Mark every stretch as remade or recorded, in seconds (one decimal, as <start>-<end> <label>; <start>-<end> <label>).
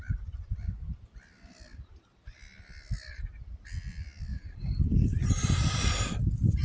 0.0-4.3 recorded; 4.3-6.1 remade; 6.1-6.6 recorded